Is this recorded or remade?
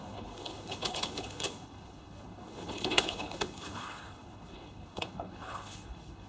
remade